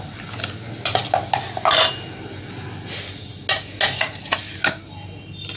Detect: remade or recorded recorded